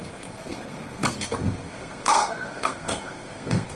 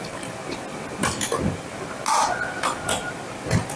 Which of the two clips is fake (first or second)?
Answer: first